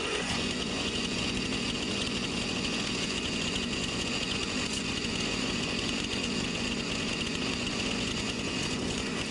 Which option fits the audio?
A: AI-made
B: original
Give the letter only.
A